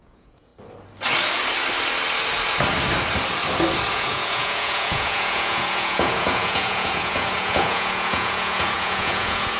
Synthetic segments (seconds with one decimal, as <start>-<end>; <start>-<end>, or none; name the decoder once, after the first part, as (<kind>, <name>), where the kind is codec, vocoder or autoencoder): 0.0-0.5 (vocoder, Vocos); 3.9-9.6